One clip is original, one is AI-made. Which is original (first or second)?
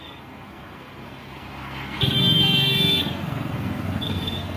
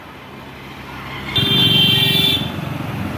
second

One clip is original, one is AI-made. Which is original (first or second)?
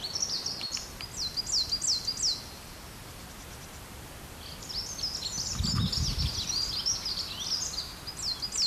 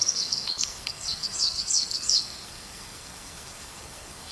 first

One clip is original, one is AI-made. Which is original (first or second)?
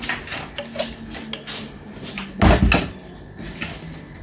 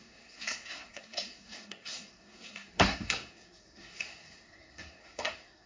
first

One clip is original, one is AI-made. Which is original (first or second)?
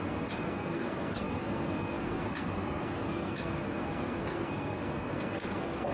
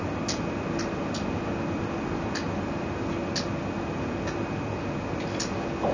second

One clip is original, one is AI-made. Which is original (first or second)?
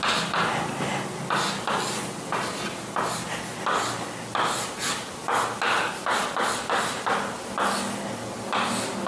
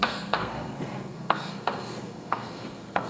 first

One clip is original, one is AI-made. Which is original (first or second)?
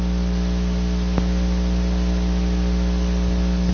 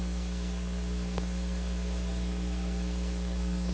first